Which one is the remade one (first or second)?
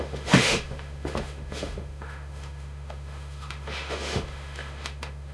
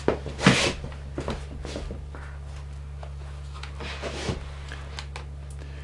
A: first